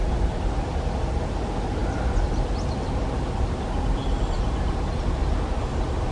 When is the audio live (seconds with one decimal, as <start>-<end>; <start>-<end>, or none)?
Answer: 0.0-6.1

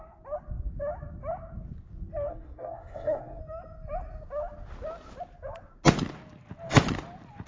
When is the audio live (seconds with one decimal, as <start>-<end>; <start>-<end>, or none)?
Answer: 0.0-2.3; 3.4-7.5

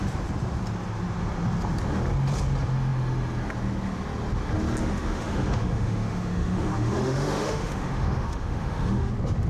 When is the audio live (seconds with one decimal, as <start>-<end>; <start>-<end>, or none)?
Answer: 0.0-4.8; 9.1-9.5

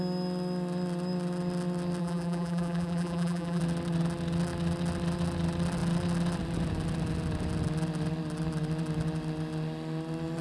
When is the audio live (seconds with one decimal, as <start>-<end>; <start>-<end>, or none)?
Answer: 0.0-2.0; 3.6-10.4

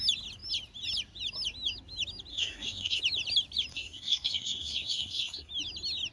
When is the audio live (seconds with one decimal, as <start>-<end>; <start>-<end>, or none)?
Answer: 0.0-2.3; 3.0-3.7; 5.5-6.1

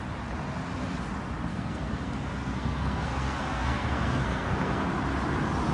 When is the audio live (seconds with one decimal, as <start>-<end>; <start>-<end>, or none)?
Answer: 0.0-1.5; 4.9-5.7

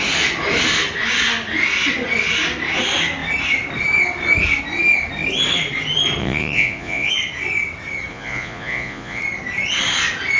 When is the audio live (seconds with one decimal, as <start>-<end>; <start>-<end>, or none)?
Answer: 0.0-6.2; 7.1-8.1; 9.2-10.4